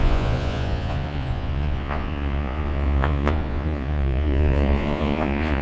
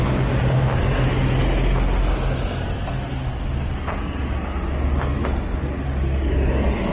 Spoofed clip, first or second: first